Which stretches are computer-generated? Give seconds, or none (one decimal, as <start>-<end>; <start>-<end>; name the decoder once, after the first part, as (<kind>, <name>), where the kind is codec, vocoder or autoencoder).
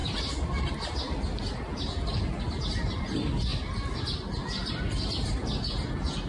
none